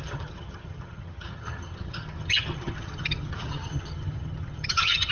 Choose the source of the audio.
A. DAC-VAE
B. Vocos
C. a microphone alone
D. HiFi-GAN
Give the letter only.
D